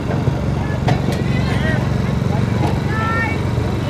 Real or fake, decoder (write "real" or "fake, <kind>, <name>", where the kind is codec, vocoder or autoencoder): real